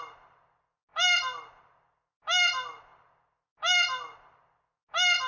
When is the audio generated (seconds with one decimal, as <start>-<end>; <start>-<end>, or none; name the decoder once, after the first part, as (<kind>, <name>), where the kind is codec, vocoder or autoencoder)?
none